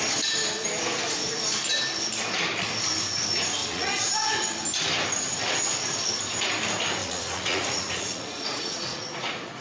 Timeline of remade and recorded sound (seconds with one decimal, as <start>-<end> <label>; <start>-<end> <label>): 0.0-3.6 recorded; 3.6-4.1 remade; 4.1-7.0 recorded; 7.0-9.6 remade